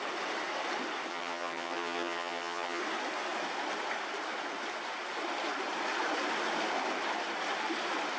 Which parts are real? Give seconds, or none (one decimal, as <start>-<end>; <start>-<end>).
0.0-1.1; 2.8-8.2